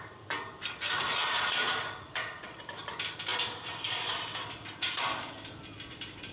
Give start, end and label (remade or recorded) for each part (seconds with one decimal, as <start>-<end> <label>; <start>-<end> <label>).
0.0-1.2 recorded; 1.2-2.6 remade; 2.6-6.3 recorded